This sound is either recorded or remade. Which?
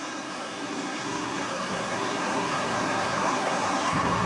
remade